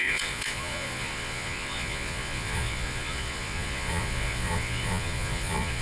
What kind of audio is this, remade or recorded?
remade